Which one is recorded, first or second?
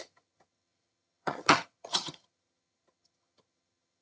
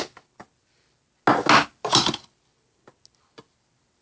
second